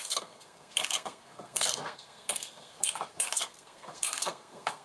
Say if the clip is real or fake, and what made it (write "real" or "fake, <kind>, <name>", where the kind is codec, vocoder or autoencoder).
fake, codec, SNAC